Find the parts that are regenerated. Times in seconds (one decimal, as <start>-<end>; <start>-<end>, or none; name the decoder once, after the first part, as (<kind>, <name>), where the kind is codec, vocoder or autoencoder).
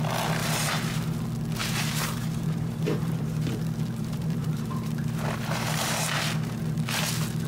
0.4-1.2 (vocoder, BigVGAN v2); 1.6-3.5; 4.0-6.6